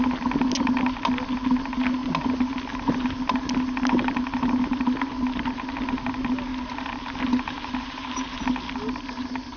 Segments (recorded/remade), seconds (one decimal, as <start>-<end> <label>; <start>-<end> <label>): 0.0-9.6 recorded